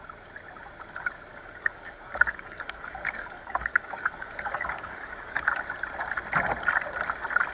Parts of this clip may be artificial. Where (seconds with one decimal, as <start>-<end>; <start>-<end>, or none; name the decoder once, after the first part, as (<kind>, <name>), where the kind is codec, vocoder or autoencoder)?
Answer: 1.3-5.6 (codec, DAC)